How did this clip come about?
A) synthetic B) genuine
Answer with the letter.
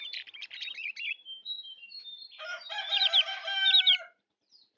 A